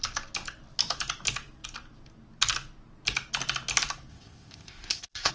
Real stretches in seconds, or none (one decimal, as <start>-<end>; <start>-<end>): 0.0-4.1